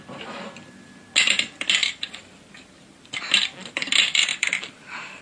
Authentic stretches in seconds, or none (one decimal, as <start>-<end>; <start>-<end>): 0.0-1.8; 3.2-4.3